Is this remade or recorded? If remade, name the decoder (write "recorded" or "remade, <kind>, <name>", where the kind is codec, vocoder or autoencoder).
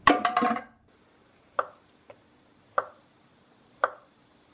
remade, vocoder, BigVGAN v2